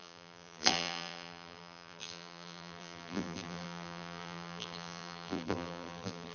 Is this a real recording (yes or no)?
no